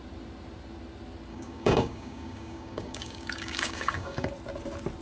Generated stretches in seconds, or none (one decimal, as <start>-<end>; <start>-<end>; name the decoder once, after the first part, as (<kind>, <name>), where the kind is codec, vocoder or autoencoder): 1.3-4.3 (codec, DAC)